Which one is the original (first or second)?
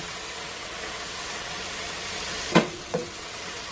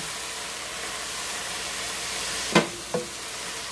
second